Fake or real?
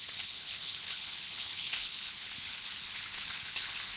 fake